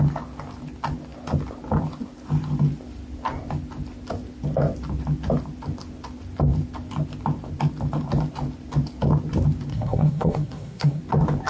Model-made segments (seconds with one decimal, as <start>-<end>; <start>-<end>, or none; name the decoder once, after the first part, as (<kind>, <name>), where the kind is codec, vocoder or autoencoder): 9.7-11.0 (codec, SNAC)